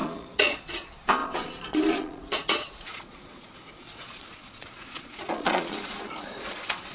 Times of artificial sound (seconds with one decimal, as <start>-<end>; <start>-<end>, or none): 0.0-6.9